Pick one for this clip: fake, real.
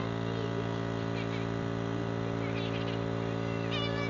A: real